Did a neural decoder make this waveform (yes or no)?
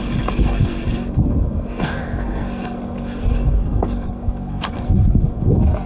yes